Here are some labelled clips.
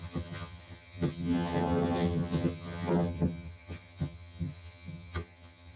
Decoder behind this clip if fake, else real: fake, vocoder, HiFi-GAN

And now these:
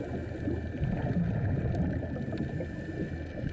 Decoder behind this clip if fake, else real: real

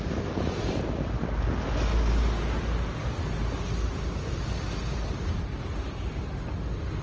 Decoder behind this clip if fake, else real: real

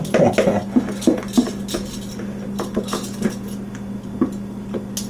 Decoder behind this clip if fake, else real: real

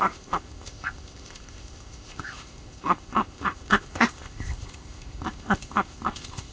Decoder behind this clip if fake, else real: fake, codec, ZipCodec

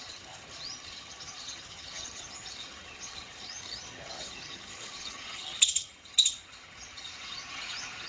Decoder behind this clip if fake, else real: fake, vocoder, HiFi-GAN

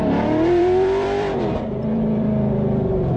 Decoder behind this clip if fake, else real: fake, vocoder, BigVGAN v2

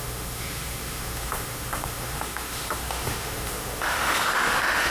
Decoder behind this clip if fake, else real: fake, autoencoder, DAC-VAE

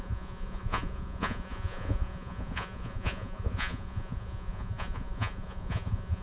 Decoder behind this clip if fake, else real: fake, vocoder, Vocos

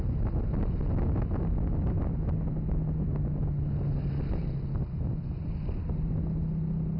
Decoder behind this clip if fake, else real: real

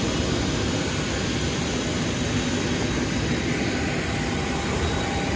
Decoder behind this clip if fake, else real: real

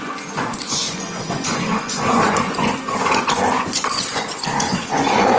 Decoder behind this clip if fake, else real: fake, vocoder, Vocos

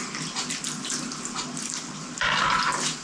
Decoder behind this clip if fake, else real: real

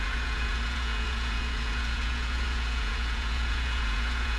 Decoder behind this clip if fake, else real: fake, vocoder, Vocos